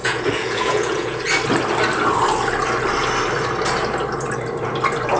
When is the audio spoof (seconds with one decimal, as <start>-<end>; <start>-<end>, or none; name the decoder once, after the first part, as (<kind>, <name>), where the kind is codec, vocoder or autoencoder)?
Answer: 0.0-1.2 (vocoder, Vocos)